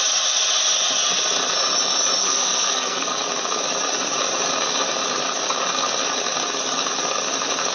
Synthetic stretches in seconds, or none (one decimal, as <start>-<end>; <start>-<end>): 2.2-3.2